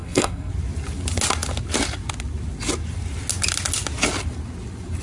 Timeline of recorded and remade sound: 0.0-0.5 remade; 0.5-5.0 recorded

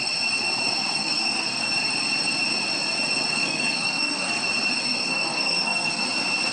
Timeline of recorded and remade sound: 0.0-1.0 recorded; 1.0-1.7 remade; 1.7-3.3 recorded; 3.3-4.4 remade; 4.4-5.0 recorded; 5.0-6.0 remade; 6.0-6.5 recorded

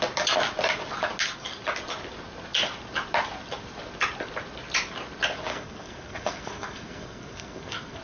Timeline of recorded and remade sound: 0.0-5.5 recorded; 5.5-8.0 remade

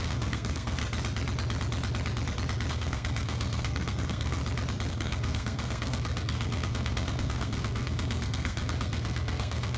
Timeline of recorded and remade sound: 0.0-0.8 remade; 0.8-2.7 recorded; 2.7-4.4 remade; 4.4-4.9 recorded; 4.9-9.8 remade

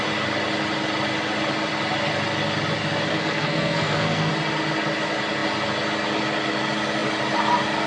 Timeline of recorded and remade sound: 0.0-3.1 recorded; 3.1-4.3 remade; 4.3-7.9 recorded

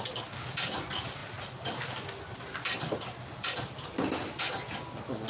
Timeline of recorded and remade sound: 0.0-5.3 recorded